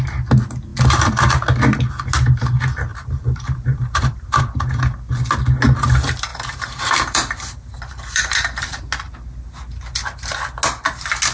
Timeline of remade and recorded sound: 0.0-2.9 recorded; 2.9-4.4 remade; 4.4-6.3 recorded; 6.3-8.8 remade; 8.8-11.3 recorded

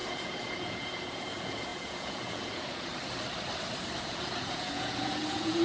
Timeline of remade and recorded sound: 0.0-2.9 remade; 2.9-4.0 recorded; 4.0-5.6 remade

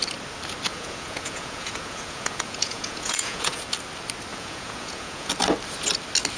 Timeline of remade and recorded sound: 0.0-0.7 recorded; 0.7-3.6 remade; 3.6-4.3 recorded; 4.3-5.3 remade; 5.3-6.4 recorded